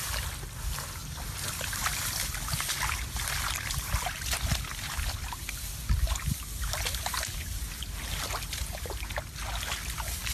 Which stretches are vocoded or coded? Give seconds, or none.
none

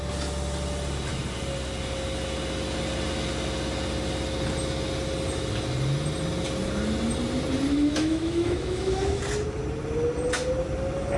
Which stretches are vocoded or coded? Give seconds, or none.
7.7-9.2

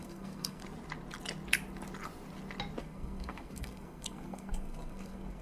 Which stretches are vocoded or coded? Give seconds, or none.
0.0-0.6; 2.8-5.4

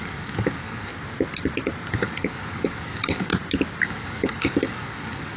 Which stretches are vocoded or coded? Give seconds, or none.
0.0-0.9; 1.9-3.3; 3.8-5.4

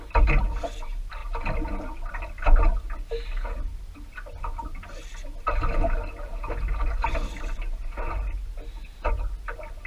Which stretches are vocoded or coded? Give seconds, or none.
none